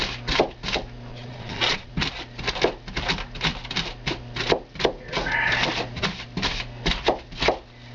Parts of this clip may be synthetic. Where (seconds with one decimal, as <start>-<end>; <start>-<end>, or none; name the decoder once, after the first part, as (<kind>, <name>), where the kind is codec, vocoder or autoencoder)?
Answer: 1.1-1.9 (vocoder, Vocos)